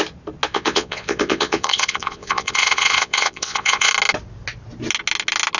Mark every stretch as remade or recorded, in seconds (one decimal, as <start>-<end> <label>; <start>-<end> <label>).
0.0-0.5 recorded; 0.5-3.9 remade; 3.9-5.6 recorded